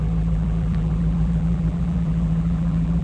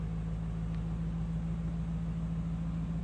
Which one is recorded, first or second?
second